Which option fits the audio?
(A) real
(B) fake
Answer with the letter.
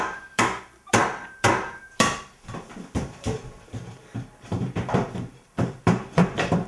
B